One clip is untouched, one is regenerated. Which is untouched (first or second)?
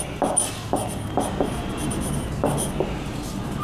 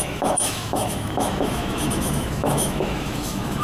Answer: first